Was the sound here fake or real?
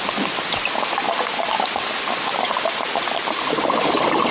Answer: real